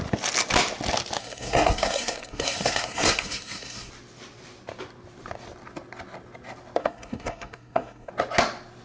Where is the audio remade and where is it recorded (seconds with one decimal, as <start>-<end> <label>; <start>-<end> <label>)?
0.0-1.2 recorded; 1.2-3.9 remade; 3.9-6.8 recorded; 6.8-8.1 remade; 8.1-8.8 recorded